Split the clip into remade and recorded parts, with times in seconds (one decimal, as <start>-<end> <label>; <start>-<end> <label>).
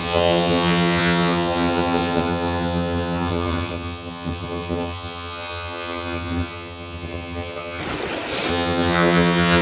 0.0-7.8 remade; 7.8-8.5 recorded; 8.5-9.6 remade